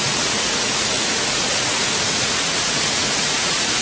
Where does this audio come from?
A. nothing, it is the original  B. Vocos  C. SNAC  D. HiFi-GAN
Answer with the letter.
B